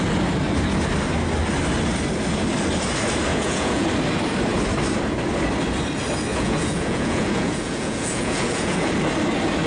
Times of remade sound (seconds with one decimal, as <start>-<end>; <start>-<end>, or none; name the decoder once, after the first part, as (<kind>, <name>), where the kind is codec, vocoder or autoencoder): 3.3-3.9 (vocoder, Vocos); 6.3-8.9